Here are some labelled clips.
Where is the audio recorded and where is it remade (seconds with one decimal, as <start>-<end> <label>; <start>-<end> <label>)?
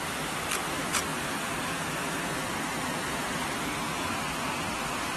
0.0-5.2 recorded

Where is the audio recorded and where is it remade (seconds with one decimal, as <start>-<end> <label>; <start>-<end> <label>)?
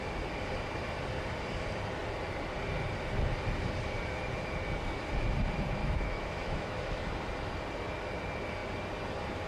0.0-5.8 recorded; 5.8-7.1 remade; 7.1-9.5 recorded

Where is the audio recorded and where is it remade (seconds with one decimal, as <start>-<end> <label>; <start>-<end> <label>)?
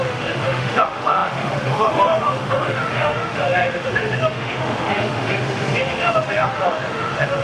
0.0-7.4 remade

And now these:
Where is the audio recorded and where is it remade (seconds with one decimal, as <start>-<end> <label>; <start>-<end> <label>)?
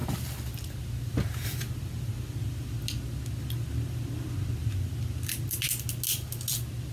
0.0-6.9 recorded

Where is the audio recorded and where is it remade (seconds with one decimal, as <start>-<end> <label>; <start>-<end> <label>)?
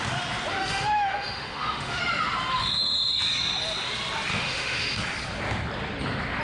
0.0-0.5 recorded; 0.5-2.0 remade; 2.0-2.5 recorded; 2.5-3.1 remade; 3.1-4.3 recorded; 4.3-5.0 remade; 5.0-6.4 recorded